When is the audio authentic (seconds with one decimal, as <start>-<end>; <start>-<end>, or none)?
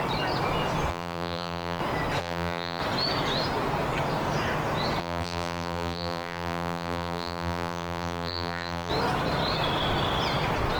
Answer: 0.0-0.9; 1.8-2.2; 2.8-5.0; 8.9-10.8